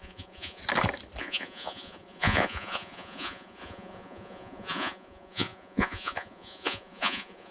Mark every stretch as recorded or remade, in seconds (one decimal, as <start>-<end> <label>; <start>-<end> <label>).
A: 0.0-0.6 remade; 0.6-1.2 recorded; 1.2-7.5 remade